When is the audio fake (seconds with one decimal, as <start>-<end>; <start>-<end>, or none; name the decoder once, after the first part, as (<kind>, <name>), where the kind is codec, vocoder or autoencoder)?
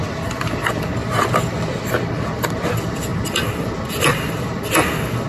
1.0-1.9 (vocoder, BigVGAN v2)